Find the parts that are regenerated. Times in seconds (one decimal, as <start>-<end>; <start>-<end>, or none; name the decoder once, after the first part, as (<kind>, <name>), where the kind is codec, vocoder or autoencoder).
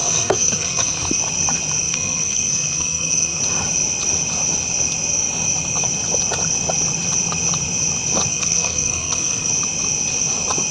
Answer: 0.0-1.2 (codec, SNAC); 1.8-3.4; 8.3-9.5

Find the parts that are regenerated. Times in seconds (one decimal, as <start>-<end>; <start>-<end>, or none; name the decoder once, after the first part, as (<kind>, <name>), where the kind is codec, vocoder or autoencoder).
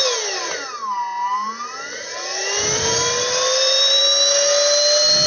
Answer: 2.4-4.0 (vocoder, BigVGAN v2)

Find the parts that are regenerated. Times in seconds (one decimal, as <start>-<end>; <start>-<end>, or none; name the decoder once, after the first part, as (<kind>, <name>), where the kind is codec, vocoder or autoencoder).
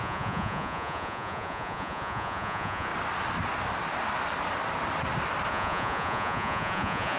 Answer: 0.0-2.9 (vocoder, Vocos); 5.5-7.2